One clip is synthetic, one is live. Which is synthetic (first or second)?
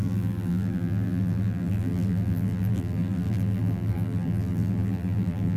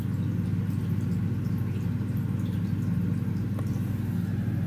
first